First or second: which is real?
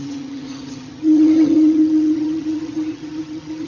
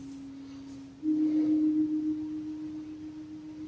second